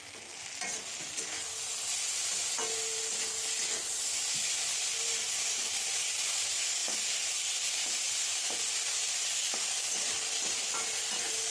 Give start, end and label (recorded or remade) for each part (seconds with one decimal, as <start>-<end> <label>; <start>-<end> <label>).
0.0-11.5 recorded